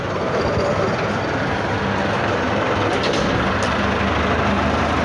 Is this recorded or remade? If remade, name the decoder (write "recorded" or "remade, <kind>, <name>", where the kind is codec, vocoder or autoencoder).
recorded